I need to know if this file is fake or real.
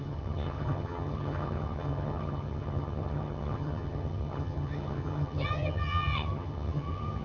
fake